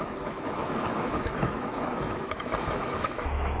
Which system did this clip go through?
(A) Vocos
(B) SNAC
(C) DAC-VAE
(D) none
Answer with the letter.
C